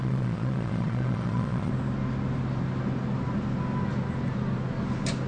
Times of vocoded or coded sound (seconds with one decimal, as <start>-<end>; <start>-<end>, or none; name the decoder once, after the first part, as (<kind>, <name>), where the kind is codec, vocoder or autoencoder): 0.0-1.7 (vocoder, Vocos)